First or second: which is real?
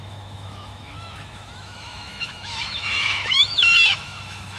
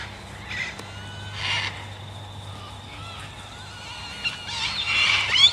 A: second